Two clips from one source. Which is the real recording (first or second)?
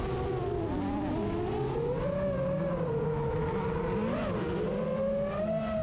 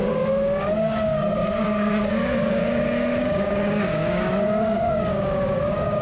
first